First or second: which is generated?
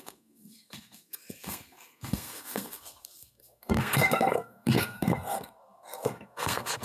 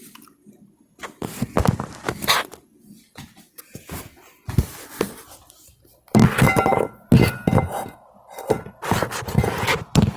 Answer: first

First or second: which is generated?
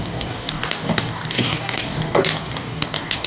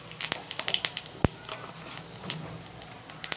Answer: first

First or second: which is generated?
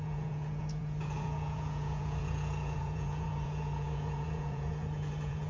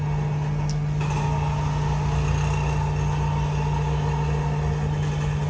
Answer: first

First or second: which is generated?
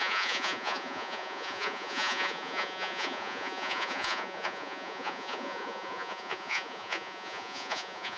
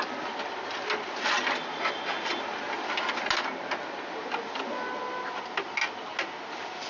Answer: first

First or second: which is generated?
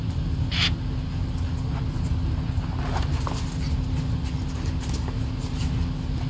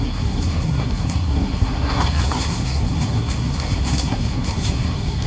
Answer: second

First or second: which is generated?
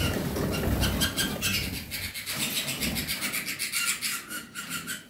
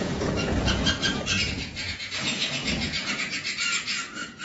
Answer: second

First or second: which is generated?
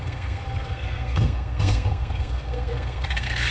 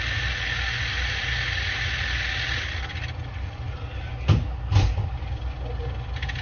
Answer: first